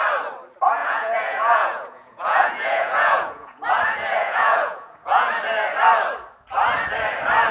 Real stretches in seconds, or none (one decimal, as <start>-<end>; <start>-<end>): 0.0-0.8; 3.7-4.2; 5.3-7.5

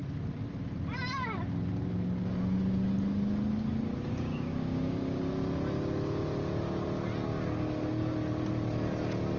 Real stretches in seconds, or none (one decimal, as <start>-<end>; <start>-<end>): 0.0-3.9; 5.4-9.4